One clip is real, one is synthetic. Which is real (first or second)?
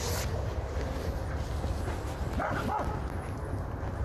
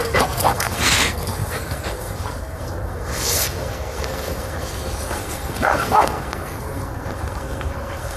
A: first